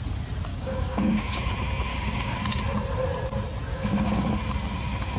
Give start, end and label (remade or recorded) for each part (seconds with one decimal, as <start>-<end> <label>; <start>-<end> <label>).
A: 0.0-0.5 recorded; 0.5-1.5 remade; 1.5-1.9 recorded; 1.9-2.4 remade; 2.4-3.7 recorded; 3.7-4.3 remade; 4.3-5.2 recorded